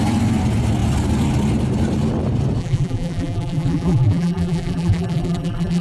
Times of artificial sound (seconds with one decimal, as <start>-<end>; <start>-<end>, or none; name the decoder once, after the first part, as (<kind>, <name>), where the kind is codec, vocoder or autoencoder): 2.6-5.8 (vocoder, BigVGAN v2)